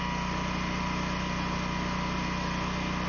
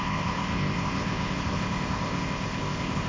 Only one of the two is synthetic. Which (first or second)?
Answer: second